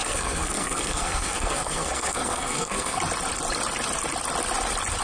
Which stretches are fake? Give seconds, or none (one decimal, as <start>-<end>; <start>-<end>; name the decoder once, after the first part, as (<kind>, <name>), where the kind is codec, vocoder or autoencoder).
0.0-3.0 (codec, SNAC)